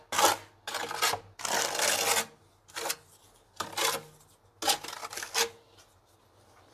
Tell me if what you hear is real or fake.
real